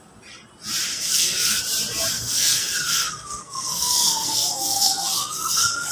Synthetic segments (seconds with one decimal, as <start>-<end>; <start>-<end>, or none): 0.9-1.6; 2.1-5.9